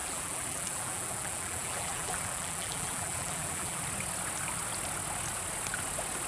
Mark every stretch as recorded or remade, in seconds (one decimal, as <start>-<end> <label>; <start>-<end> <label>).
0.0-3.8 remade; 3.8-6.3 recorded